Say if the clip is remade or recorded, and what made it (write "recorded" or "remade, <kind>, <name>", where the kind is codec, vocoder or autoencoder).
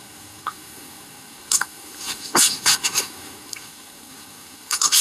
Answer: remade, codec, SNAC